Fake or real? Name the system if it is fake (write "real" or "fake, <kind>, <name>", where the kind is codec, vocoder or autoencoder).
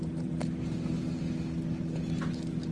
real